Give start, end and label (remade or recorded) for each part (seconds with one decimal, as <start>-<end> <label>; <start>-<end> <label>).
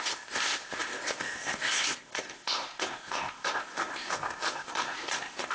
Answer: 0.0-5.5 remade